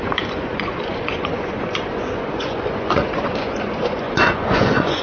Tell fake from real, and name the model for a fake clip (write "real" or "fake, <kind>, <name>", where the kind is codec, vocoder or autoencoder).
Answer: fake, vocoder, Vocos